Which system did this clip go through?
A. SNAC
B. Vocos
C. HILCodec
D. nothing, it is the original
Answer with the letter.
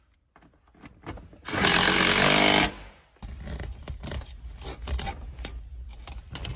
D